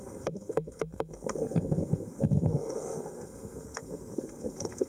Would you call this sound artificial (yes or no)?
yes